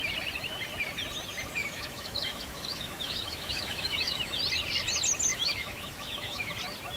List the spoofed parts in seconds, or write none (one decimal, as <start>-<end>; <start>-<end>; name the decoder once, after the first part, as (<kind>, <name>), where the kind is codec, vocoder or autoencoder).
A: 1.6-4.4 (autoencoder, DAC-VAE); 5.3-6.5